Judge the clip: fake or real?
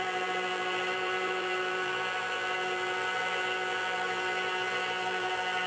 fake